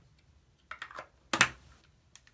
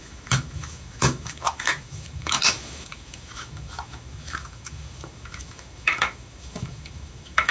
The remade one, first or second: second